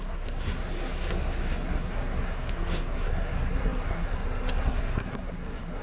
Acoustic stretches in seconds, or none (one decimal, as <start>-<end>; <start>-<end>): none